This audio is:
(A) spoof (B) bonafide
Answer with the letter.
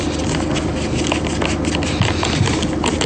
B